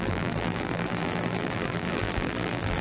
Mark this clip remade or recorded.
remade